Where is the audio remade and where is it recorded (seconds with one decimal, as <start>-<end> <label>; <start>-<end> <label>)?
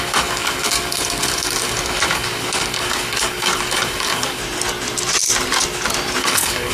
0.0-4.4 remade; 4.4-6.2 recorded; 6.2-6.7 remade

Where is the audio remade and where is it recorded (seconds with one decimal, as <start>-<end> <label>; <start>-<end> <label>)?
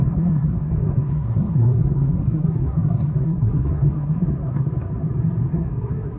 0.0-4.7 remade; 4.7-5.5 recorded; 5.5-6.2 remade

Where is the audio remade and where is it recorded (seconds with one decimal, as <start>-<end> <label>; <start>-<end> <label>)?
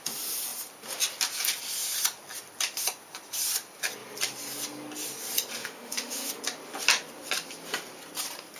0.0-5.6 recorded; 5.6-6.4 remade; 6.4-8.6 recorded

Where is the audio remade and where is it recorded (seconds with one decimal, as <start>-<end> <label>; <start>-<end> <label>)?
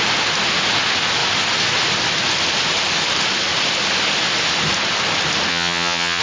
0.0-5.5 recorded; 5.5-6.2 remade